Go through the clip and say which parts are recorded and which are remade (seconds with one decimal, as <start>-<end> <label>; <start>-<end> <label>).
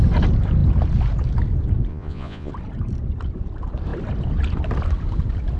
0.0-1.9 recorded; 1.9-2.5 remade; 2.5-5.6 recorded